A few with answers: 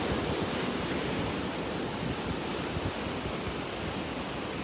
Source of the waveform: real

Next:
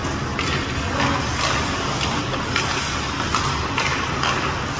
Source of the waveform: real